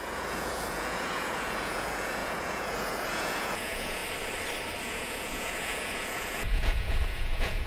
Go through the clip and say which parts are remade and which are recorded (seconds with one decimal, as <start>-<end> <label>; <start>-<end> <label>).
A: 0.0-4.0 remade; 4.0-4.8 recorded; 4.8-7.7 remade